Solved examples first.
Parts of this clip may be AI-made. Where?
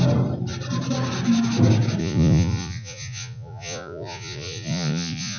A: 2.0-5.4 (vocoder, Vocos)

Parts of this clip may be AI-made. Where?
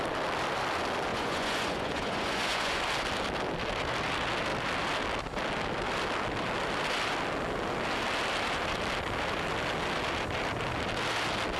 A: 1.1-2.8 (vocoder, Vocos)